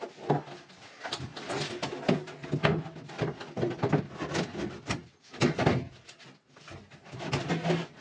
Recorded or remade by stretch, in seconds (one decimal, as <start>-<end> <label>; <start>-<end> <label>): 0.0-8.0 recorded